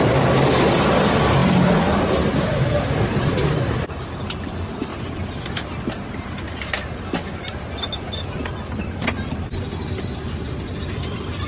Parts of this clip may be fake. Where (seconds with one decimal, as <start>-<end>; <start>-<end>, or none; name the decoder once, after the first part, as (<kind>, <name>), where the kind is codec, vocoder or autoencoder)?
none